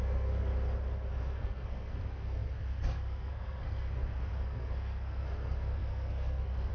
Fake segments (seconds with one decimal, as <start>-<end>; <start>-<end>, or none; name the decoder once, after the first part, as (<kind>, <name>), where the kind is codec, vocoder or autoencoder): 0.0-0.5 (codec, SNAC); 1.1-6.7